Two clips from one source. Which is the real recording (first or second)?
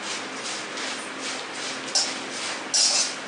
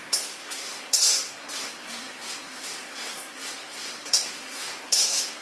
first